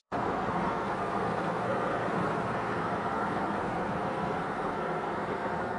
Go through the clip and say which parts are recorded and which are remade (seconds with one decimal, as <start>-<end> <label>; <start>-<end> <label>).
0.0-5.8 remade